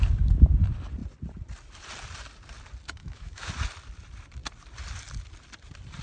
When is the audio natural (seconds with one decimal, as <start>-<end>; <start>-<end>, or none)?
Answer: 0.0-3.0; 3.5-6.0